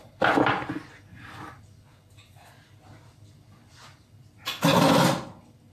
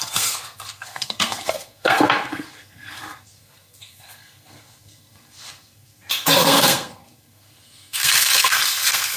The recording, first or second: first